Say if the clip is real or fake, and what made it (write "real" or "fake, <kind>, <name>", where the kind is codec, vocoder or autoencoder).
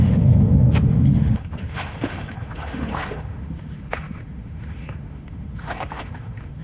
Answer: fake, autoencoder, DAC-VAE